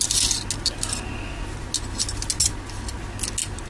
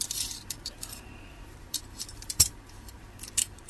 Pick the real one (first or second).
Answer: first